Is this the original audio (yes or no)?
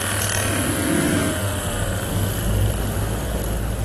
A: yes